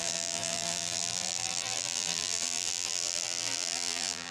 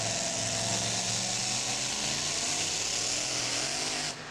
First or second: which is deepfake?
first